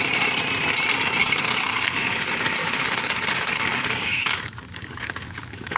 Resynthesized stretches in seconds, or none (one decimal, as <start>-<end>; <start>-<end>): 1.2-2.2; 2.6-5.8

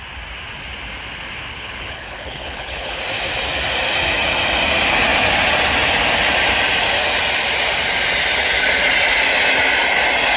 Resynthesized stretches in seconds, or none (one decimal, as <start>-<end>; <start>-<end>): 1.5-3.0

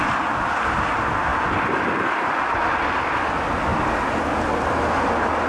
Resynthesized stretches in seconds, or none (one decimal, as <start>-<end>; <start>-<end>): none

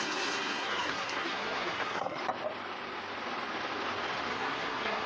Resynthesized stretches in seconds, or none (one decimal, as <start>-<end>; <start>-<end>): 0.0-2.2; 4.3-5.1

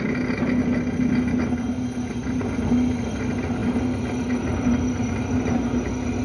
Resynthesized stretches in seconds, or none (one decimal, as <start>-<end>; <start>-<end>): none

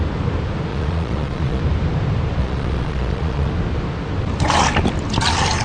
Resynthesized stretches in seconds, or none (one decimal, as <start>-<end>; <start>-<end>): 0.7-1.6; 2.4-3.5

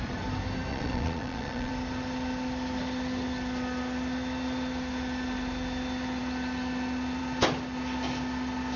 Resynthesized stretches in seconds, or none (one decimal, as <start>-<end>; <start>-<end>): 0.7-1.7

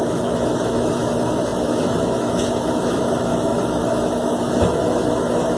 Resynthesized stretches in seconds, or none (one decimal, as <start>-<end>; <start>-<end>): 0.0-5.6